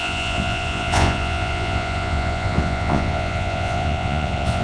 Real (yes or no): no